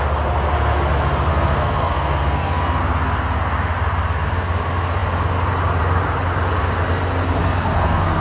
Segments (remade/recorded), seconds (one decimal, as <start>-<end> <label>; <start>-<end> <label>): 0.0-1.3 recorded; 1.3-2.8 remade; 2.8-7.4 recorded; 7.4-8.2 remade